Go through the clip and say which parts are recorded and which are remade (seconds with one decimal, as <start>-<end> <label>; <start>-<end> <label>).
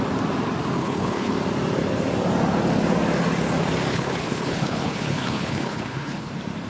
0.0-0.8 recorded; 0.8-1.3 remade; 1.3-3.9 recorded; 3.9-6.3 remade; 6.3-6.7 recorded